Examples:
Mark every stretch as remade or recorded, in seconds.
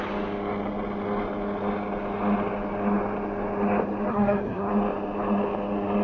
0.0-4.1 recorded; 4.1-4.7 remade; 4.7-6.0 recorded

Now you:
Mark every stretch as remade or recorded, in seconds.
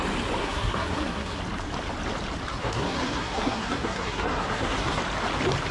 0.0-0.4 recorded; 0.4-1.4 remade; 1.4-2.5 recorded; 2.5-5.0 remade; 5.0-5.7 recorded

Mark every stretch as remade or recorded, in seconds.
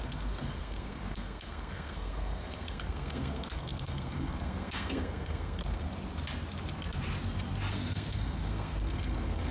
0.0-5.9 remade; 5.9-7.7 recorded; 7.7-9.5 remade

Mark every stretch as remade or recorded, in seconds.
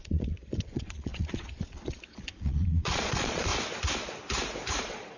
0.0-3.5 remade; 3.5-4.8 recorded; 4.8-5.2 remade